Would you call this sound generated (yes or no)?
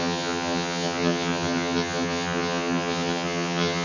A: yes